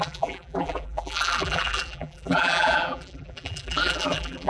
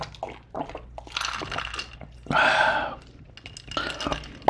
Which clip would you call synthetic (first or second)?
first